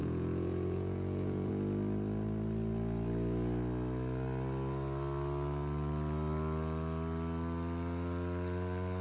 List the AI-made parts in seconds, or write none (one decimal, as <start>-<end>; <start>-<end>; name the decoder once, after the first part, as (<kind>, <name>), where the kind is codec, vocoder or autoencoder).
0.0-1.5 (vocoder, Vocos)